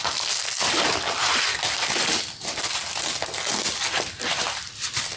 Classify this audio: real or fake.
real